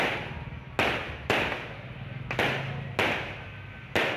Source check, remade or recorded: recorded